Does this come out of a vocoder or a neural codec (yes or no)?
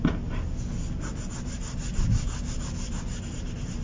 no